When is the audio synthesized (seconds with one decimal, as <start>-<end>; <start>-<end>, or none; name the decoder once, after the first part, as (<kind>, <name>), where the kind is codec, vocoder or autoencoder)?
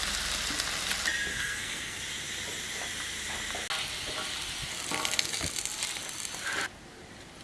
1.3-2.0 (codec, SNAC)